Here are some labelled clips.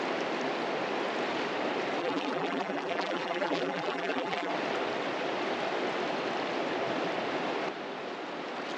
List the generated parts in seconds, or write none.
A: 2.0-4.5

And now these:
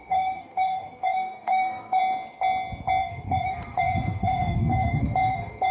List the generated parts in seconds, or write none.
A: 0.0-2.0; 3.0-5.7

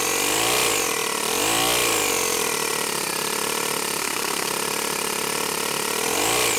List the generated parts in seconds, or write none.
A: 4.0-4.5

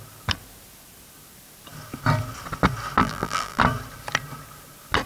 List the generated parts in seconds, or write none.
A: 3.0-3.6

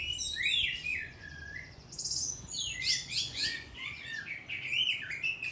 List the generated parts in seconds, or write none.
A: 0.9-4.2